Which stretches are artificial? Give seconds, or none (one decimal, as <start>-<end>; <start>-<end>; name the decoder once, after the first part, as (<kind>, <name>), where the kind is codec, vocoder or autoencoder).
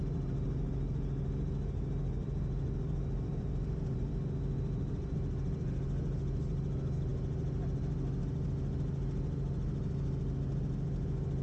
2.2-5.1 (vocoder, BigVGAN v2)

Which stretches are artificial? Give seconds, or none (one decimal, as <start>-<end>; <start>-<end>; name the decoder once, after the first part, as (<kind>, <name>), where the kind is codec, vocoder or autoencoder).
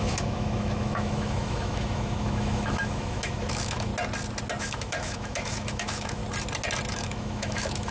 0.0-3.9 (autoencoder, DAC-VAE); 4.6-6.2; 6.9-7.9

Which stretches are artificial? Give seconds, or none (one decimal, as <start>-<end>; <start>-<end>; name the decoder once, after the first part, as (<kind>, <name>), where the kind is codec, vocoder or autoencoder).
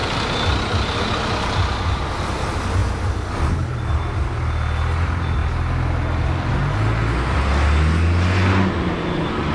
none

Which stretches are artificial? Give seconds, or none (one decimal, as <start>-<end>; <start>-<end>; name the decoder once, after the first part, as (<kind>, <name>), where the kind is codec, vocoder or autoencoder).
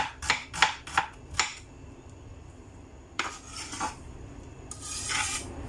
0.4-1.0 (vocoder, BigVGAN v2); 1.5-4.9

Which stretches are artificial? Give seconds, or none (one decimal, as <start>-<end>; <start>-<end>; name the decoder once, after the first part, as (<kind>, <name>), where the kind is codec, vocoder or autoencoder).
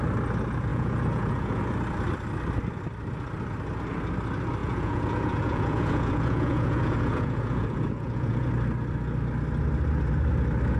0.7-1.6 (vocoder, Vocos); 4.6-8.5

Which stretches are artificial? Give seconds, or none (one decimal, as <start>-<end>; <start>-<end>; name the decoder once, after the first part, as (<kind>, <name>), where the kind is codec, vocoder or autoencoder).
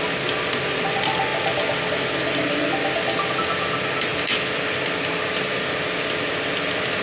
none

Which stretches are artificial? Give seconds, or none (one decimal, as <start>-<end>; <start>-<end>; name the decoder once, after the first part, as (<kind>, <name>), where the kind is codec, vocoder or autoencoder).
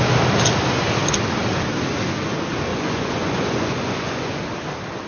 2.7-4.4 (vocoder, Vocos)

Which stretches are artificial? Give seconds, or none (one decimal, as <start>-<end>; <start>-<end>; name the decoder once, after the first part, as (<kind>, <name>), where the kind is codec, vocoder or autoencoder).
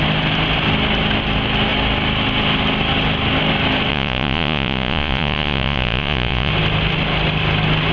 3.9-6.5 (vocoder, Vocos)